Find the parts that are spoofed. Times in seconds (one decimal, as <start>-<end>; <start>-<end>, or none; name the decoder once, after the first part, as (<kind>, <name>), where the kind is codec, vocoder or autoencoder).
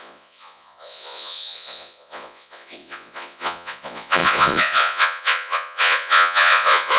0.0-7.0 (vocoder, Vocos)